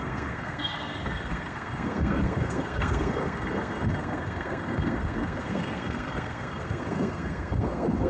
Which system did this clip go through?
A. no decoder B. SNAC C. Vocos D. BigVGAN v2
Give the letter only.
B